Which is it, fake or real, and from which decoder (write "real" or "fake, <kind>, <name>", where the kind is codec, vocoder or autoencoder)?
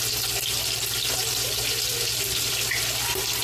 real